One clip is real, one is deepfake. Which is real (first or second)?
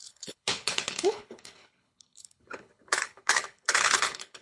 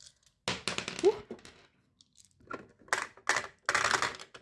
second